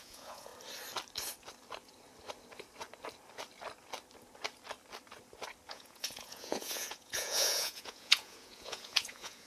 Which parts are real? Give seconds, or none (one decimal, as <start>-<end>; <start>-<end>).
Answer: 0.5-5.7